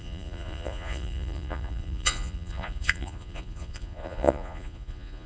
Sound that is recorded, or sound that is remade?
remade